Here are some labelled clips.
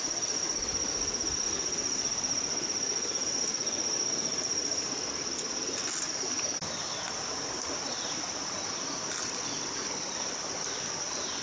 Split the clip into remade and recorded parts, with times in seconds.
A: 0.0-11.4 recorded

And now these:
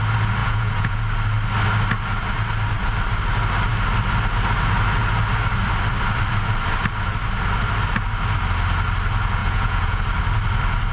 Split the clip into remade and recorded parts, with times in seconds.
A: 0.0-0.4 recorded; 0.4-1.0 remade; 1.0-9.4 recorded; 9.4-10.0 remade; 10.0-10.9 recorded

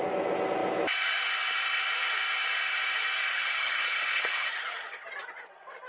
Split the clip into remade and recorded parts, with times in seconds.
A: 0.0-3.3 recorded; 3.3-4.5 remade; 4.5-5.9 recorded

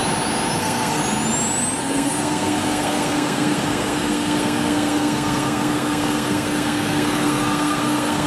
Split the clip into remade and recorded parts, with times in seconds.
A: 0.0-0.6 recorded; 0.6-1.0 remade; 1.0-1.8 recorded; 1.8-8.3 remade

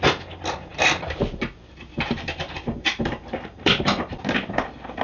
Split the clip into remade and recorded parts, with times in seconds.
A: 0.0-0.7 recorded; 0.7-3.7 remade; 3.7-5.0 recorded

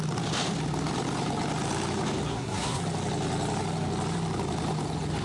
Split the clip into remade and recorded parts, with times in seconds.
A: 0.0-2.3 recorded; 2.3-2.8 remade; 2.8-5.2 recorded

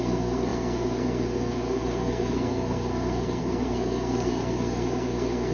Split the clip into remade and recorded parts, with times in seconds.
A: 0.0-5.5 remade